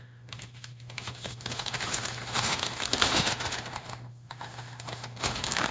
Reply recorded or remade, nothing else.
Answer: remade